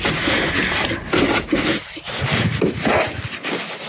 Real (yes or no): yes